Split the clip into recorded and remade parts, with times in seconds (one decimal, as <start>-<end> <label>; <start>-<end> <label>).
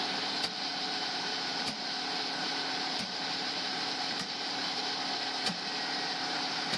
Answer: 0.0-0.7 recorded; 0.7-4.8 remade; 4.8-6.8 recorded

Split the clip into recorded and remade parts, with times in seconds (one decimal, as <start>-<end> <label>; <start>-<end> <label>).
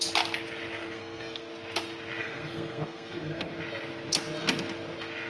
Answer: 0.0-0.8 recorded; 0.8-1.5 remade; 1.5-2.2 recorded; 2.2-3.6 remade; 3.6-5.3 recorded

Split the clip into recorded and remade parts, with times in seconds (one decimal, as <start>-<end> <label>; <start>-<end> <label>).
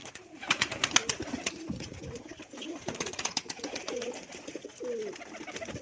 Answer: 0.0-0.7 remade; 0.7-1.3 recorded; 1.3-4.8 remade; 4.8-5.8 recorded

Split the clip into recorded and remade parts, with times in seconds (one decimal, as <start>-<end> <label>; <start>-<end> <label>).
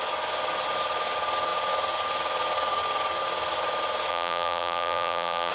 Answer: 0.0-4.1 recorded; 4.1-5.5 remade